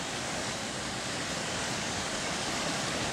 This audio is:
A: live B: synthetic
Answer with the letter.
B